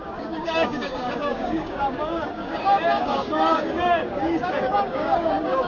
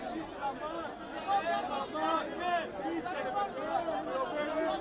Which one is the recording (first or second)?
second